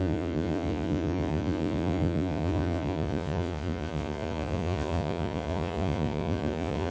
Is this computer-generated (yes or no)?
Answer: yes